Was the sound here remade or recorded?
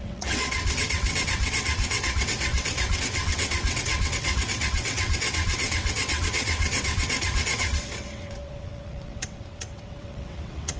remade